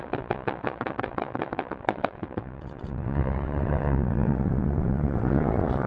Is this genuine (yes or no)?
no